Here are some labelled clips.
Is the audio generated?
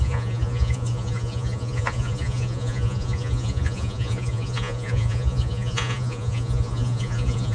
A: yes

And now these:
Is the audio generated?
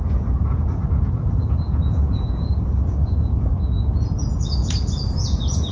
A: yes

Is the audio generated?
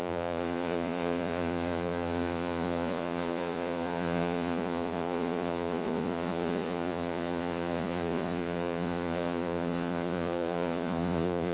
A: yes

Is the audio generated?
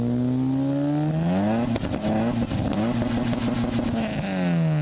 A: no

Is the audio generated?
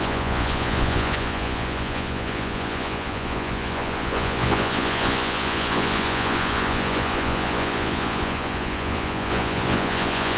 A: yes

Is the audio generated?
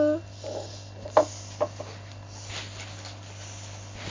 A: no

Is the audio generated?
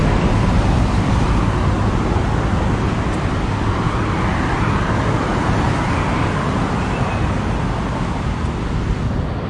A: no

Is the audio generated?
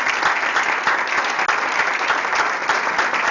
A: no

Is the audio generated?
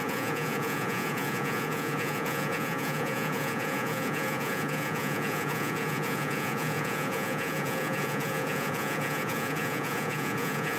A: yes